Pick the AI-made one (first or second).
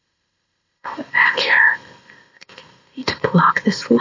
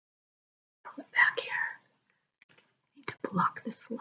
first